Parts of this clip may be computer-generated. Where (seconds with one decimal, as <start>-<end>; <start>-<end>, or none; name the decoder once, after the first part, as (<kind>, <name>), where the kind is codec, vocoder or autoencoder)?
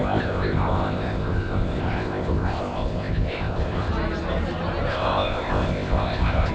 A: 0.0-3.9 (codec, ZipCodec); 4.9-6.5